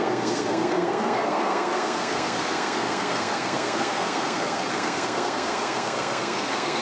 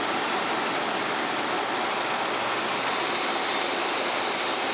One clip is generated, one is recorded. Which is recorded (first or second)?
second